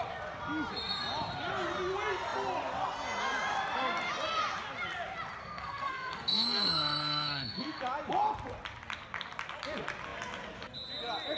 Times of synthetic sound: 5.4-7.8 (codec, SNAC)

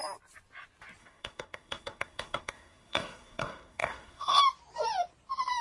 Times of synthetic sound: 1.0-4.4 (codec, SNAC)

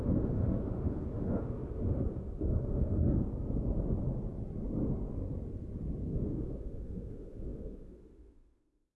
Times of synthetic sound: 0.0-3.3 (autoencoder, DAC-VAE); 6.1-9.0